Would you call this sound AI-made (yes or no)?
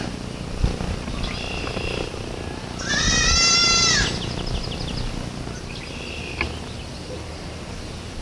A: no